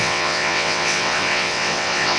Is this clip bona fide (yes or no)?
no